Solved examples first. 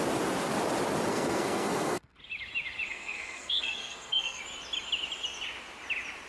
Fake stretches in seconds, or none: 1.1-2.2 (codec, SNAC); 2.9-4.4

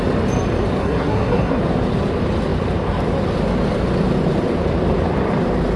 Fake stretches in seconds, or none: 0.8-1.6 (codec, SNAC)

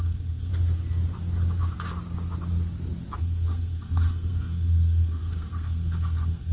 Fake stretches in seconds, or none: 0.0-0.5 (codec, SNAC); 3.2-6.5

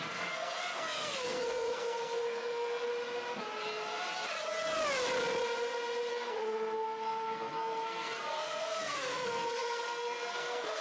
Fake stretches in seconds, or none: 0.0-2.9 (codec, SNAC); 6.1-10.8

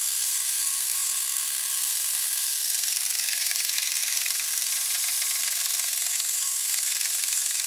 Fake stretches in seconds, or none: 0.0-4.7 (codec, SNAC); 5.4-7.7

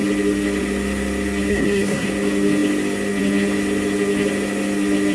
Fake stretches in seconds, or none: 1.5-2.1 (codec, SNAC)

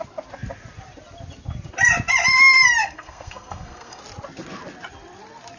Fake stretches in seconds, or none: 2.8-4.0 (codec, SNAC)